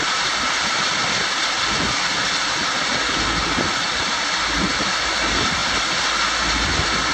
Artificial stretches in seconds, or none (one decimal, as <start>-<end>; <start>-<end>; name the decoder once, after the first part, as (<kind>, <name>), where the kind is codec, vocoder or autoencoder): 0.0-1.0 (vocoder, BigVGAN v2); 3.1-5.6; 6.6-7.1